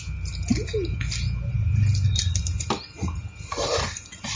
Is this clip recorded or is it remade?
recorded